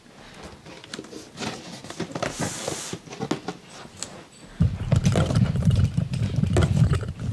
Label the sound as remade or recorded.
recorded